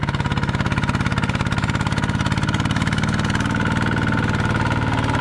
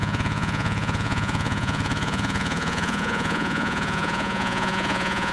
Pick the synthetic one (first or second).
second